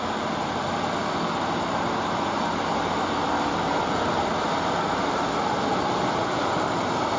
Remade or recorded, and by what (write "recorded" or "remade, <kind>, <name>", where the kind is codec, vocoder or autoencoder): recorded